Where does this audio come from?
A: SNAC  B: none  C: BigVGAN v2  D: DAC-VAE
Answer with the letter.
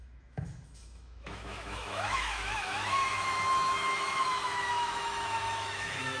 D